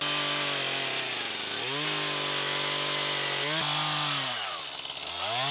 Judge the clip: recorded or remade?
recorded